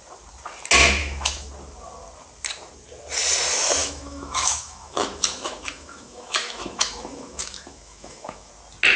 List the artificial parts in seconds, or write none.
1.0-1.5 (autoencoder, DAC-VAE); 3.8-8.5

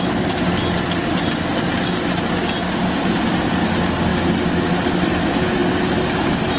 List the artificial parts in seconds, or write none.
none

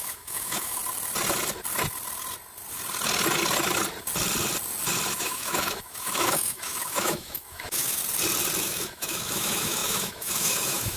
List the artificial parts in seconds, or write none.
0.0-0.8 (autoencoder, DAC-VAE); 5.2-8.0; 8.6-11.0

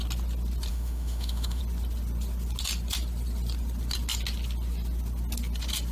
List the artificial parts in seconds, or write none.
0.7-1.6 (autoencoder, DAC-VAE)

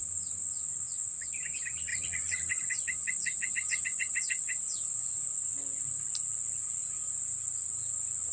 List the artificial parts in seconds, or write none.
0.0-1.4 (vocoder, Vocos); 1.9-5.5; 6.8-7.4